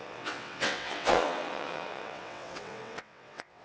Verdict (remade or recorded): remade